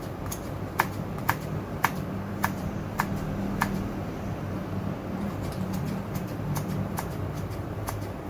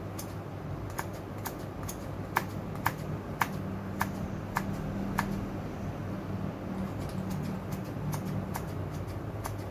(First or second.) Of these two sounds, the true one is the second